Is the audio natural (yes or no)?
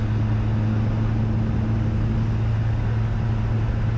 yes